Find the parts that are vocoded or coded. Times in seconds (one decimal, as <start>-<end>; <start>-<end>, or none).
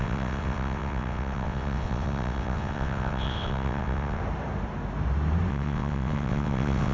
0.0-4.2; 5.5-6.9